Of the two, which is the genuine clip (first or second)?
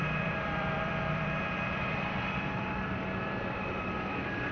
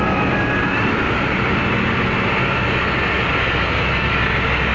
second